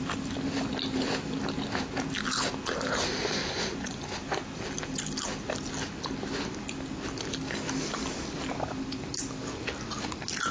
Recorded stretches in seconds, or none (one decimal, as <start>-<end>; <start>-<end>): 0.0-3.4; 4.0-10.5